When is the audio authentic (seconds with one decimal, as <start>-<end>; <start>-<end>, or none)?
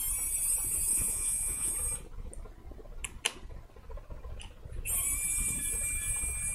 0.0-0.9; 1.7-6.5